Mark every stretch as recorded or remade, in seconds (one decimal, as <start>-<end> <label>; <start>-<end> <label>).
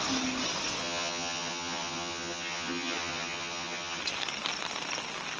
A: 0.0-0.8 recorded; 0.8-4.0 remade; 4.0-5.4 recorded